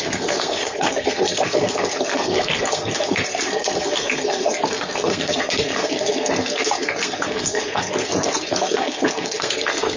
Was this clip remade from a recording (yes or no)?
yes